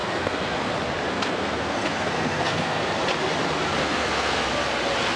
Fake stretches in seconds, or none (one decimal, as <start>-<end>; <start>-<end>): 0.0-0.7; 1.1-2.8; 3.8-4.5